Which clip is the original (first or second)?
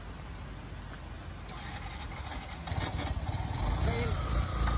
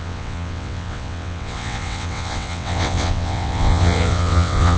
first